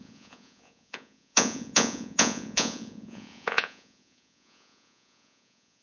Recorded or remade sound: remade